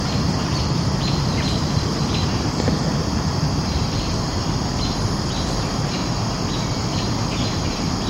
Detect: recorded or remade remade